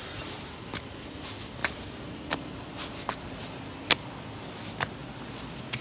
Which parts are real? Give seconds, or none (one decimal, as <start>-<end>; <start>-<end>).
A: 0.0-5.8